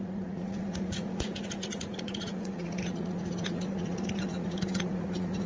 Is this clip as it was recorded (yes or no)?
no